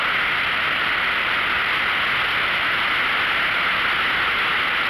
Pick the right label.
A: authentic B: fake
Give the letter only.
A